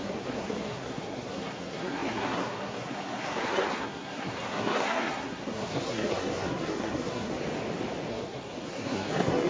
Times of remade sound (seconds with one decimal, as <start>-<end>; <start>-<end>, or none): 0.0-7.3; 8.1-9.5